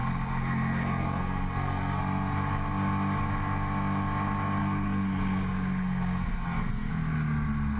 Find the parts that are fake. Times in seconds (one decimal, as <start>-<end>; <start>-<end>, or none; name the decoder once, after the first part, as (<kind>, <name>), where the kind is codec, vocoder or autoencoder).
0.0-2.0 (codec, SNAC); 4.6-6.9